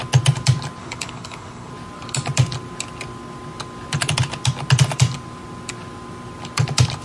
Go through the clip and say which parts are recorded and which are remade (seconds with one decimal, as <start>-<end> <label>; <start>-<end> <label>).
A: 0.0-0.8 recorded; 0.8-1.7 remade; 1.7-7.0 recorded